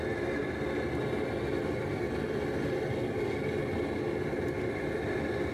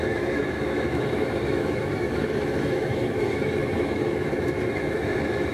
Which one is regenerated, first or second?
second